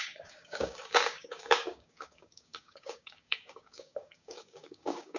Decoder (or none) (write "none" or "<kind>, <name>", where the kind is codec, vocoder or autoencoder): codec, DAC